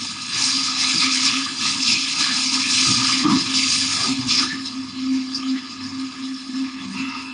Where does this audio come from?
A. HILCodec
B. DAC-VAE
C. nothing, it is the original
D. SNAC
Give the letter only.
A